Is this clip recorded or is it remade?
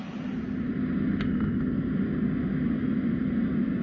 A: recorded